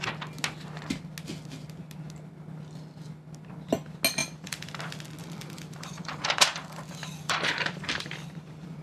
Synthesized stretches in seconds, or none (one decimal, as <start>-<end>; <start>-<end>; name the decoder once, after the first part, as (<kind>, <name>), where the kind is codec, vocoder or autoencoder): 4.2-4.8 (vocoder, BigVGAN v2); 5.2-8.8